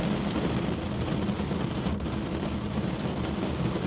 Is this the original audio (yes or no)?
yes